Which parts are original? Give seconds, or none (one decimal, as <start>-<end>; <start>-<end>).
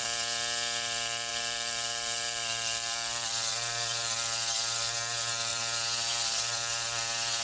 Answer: 0.0-1.3; 3.5-7.4